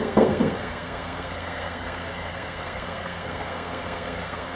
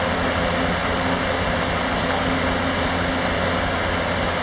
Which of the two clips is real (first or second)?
second